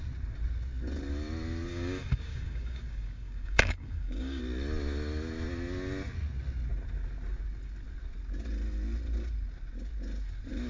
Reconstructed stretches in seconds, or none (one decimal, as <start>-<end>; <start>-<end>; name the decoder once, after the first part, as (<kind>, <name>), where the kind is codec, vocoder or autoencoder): 1.7-4.4 (codec, DAC)